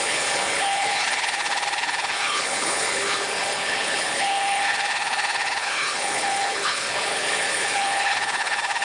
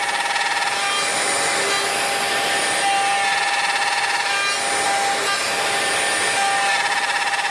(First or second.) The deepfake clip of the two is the first